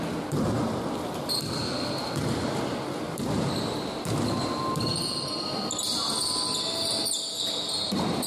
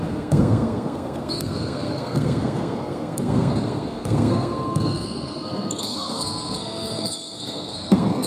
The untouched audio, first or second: first